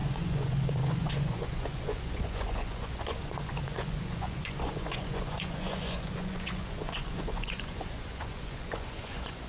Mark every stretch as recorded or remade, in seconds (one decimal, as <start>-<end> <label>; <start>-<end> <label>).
0.0-9.5 remade